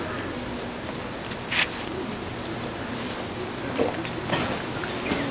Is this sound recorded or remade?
recorded